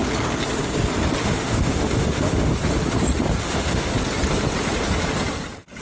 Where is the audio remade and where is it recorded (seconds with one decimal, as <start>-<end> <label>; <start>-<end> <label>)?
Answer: 0.0-1.2 recorded; 1.2-2.5 remade; 2.5-3.4 recorded; 3.4-3.9 remade; 3.9-5.8 recorded